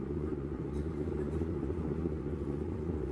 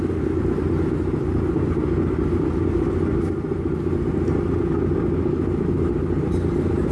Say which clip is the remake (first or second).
first